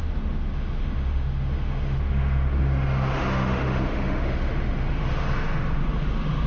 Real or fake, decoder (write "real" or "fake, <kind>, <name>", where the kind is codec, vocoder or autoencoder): fake, autoencoder, DAC-VAE